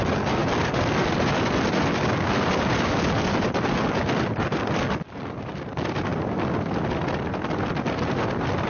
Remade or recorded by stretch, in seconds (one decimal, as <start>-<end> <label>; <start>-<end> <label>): 0.0-8.7 recorded